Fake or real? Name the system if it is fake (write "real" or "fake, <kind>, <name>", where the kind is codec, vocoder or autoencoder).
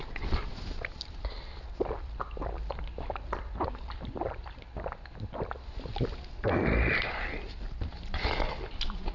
fake, vocoder, BigVGAN v2